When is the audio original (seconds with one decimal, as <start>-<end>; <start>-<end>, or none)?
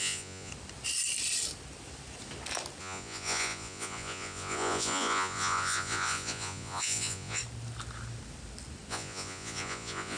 0.5-2.8; 7.4-8.9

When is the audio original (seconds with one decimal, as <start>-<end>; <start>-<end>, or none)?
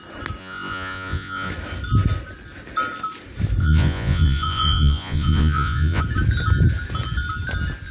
0.0-0.4; 1.5-3.6; 6.0-7.9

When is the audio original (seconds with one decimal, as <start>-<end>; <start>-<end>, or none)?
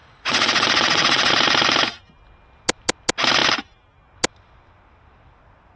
1.3-5.8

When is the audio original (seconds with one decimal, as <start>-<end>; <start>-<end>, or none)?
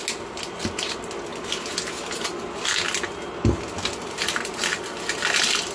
0.0-5.7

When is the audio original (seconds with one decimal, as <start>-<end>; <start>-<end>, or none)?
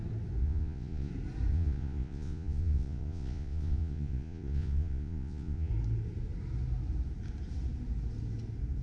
0.0-0.4; 1.1-1.5; 5.7-8.8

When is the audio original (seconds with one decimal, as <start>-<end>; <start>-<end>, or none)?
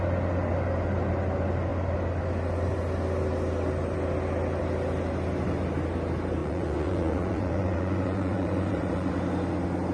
0.0-6.4; 9.1-9.9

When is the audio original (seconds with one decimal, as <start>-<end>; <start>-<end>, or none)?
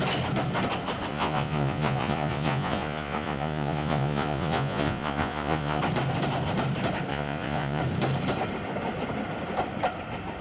0.0-1.1; 5.8-7.1; 7.8-10.4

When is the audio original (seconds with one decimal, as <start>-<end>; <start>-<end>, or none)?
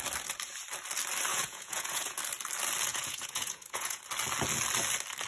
0.0-1.3; 2.2-2.9; 4.0-5.3